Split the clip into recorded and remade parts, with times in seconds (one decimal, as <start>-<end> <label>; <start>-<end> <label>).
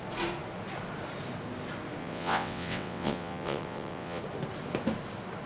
0.0-2.0 recorded; 2.0-4.2 remade; 4.2-5.5 recorded